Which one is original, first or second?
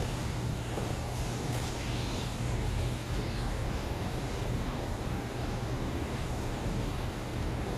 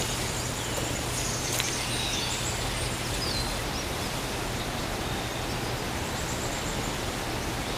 second